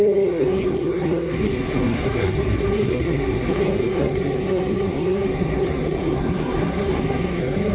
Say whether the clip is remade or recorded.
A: remade